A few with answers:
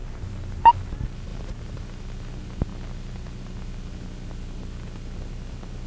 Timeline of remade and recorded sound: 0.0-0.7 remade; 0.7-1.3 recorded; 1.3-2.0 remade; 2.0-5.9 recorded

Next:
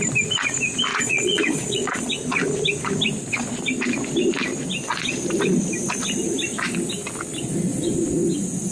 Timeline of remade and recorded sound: 0.0-0.9 recorded; 0.9-2.1 remade; 2.1-8.7 recorded

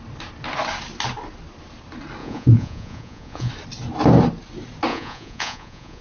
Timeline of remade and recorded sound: 0.0-2.2 recorded; 2.2-3.5 remade; 3.5-4.9 recorded; 4.9-6.0 remade

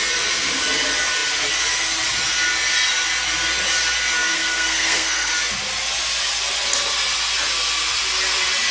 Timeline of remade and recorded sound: 0.0-4.3 recorded; 4.3-5.3 remade; 5.3-8.7 recorded

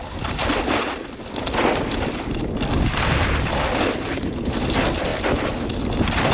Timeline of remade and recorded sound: 0.0-6.3 recorded